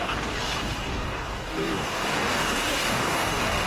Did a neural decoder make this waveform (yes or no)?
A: yes